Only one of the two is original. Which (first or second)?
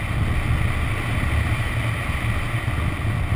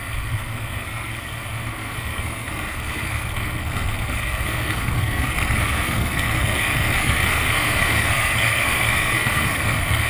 first